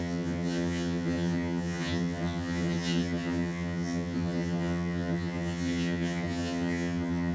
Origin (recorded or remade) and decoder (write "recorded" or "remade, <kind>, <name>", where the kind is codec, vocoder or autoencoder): remade, vocoder, HiFi-GAN